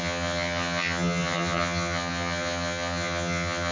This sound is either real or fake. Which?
fake